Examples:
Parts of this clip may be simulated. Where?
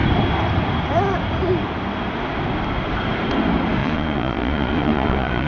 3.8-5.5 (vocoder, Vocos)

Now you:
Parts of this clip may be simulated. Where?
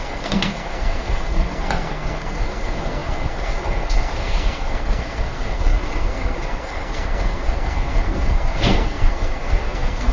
0.0-10.1 (codec, SNAC)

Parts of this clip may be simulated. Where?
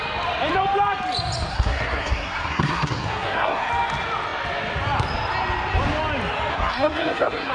1.5-3.7 (codec, SNAC); 6.5-7.5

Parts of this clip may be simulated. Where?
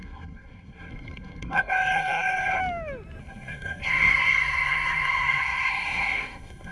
0.0-2.6 (codec, SNAC); 3.2-6.7